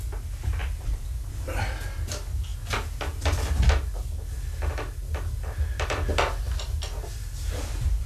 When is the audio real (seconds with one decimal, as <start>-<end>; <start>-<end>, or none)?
0.0-8.1